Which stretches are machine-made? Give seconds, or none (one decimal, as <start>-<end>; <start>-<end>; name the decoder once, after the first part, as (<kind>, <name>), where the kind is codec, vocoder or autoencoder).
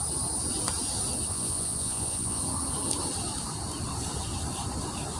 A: 1.3-2.4 (vocoder, Vocos)